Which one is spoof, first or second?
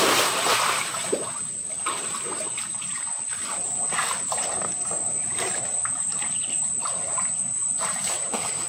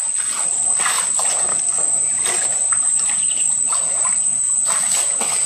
first